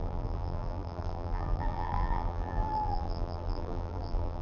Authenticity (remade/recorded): remade